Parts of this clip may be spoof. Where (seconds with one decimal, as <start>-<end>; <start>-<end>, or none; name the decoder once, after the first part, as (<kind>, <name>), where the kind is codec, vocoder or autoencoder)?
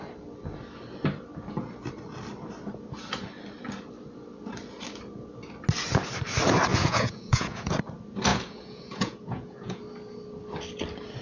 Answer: 6.7-7.8 (vocoder, Vocos); 8.3-9.8